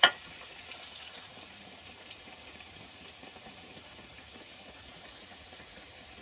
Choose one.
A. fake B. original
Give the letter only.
A